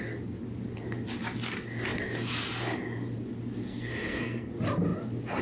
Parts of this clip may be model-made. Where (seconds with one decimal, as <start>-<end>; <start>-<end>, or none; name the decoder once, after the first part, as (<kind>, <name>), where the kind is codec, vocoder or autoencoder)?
3.6-4.5 (codec, SNAC)